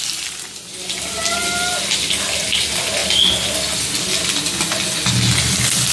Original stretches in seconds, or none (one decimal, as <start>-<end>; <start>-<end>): 0.0-5.9